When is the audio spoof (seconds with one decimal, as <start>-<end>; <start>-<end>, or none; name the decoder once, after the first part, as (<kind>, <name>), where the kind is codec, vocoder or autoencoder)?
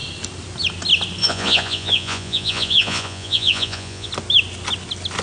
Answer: 1.2-4.1 (vocoder, Vocos)